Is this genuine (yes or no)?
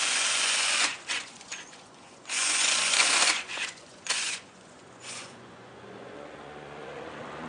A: no